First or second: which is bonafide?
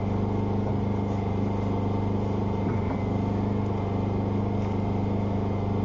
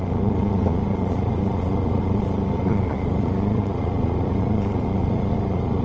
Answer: first